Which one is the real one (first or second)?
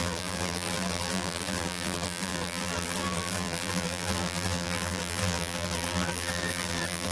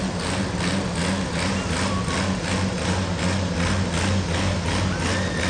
second